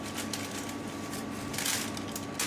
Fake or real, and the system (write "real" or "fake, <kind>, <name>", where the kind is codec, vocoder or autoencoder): real